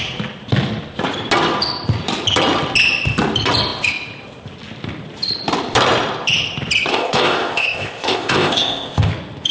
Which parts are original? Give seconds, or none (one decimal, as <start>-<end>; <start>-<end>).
0.0-6.9; 9.1-9.5

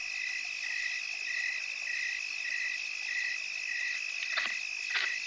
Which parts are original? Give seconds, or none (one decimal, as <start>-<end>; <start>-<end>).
0.0-5.3